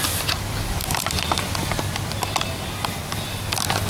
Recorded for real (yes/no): yes